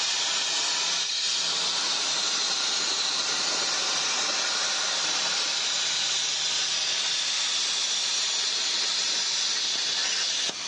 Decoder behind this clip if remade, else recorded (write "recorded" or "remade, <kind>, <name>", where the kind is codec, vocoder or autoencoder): recorded